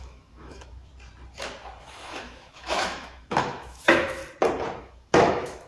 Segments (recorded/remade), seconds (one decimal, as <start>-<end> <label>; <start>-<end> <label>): 0.0-0.9 remade; 0.9-1.8 recorded; 1.8-4.2 remade; 4.2-4.8 recorded; 4.8-5.7 remade